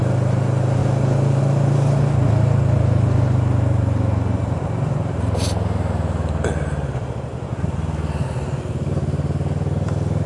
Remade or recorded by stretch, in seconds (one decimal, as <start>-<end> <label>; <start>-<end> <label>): 0.0-10.3 recorded